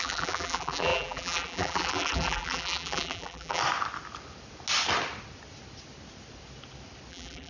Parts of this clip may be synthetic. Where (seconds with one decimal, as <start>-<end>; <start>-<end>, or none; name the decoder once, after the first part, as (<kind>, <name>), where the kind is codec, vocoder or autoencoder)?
0.0-3.6 (vocoder, BigVGAN v2); 7.1-7.5